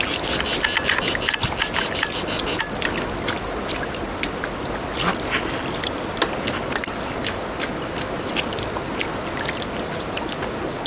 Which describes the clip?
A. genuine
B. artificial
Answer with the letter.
A